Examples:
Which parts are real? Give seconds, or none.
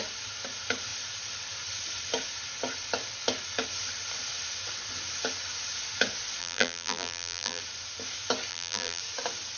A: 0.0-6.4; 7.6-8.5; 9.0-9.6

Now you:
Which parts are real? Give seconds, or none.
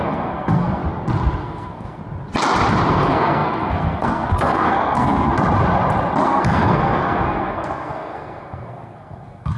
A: 0.8-1.4; 2.0-2.9; 5.3-6.2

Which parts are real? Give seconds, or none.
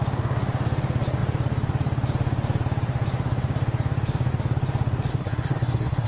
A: 0.0-5.1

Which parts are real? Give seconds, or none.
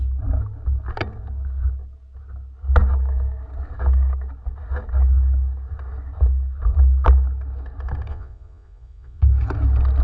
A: 0.0-8.1; 9.2-10.0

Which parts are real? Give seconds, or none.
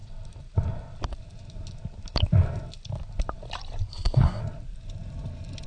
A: 0.0-3.9; 4.4-5.7